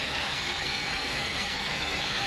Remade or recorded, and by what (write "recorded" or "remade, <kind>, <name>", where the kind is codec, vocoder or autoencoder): remade, codec, SNAC